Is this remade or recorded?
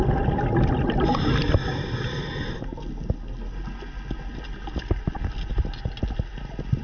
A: recorded